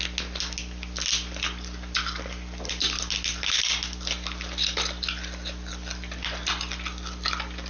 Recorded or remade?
recorded